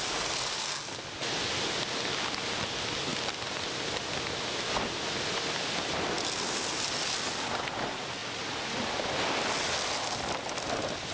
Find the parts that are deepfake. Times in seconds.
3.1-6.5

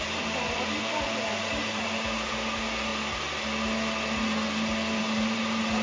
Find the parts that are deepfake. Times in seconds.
0.0-2.9; 5.0-5.8

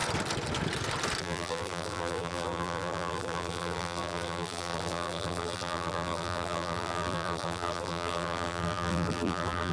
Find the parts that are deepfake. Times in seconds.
1.2-9.7

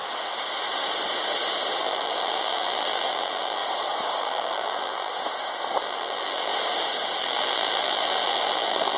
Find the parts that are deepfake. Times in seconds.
1.8-3.6; 4.2-5.1; 5.8-6.5; 7.2-9.0